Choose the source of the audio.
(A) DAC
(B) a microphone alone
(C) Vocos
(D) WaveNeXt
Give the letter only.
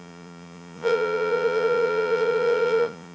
C